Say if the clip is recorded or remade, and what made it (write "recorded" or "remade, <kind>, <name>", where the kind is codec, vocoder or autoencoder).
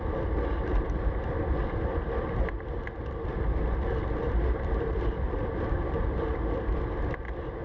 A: recorded